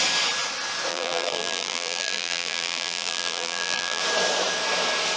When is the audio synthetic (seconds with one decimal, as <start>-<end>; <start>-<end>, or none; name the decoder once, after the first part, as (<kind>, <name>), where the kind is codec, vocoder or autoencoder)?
0.9-4.0 (vocoder, BigVGAN v2)

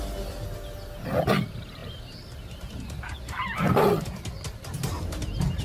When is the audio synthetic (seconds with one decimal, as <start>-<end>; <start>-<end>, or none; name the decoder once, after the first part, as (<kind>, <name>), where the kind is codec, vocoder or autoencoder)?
none

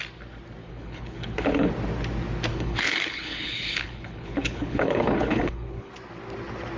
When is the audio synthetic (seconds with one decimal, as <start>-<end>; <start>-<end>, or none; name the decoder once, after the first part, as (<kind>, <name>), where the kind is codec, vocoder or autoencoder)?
0.6-1.7 (codec, HILCodec); 2.5-5.9

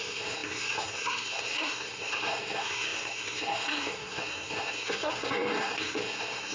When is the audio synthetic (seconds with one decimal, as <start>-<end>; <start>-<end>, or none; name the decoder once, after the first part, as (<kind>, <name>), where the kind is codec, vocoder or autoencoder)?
0.0-6.5 (codec, SNAC)

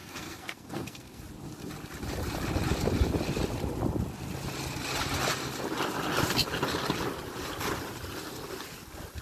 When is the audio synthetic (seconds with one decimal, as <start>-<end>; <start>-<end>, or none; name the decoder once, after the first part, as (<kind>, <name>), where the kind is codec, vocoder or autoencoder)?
0.0-1.2 (codec, SNAC)

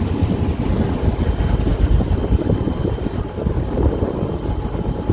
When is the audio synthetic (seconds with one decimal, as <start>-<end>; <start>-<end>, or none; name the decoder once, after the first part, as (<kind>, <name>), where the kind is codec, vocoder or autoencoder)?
none

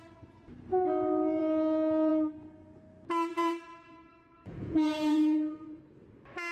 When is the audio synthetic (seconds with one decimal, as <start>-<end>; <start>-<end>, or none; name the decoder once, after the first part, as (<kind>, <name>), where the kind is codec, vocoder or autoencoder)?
3.3-5.8 (vocoder, Vocos)